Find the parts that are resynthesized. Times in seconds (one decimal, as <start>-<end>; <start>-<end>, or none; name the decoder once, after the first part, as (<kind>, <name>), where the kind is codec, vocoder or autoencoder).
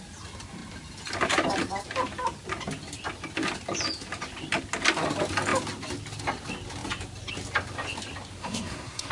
8.4-9.1 (codec, SNAC)